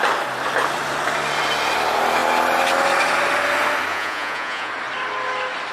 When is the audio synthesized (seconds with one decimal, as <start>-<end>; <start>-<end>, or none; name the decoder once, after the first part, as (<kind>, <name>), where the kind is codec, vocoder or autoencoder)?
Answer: 3.9-4.7 (vocoder, Vocos)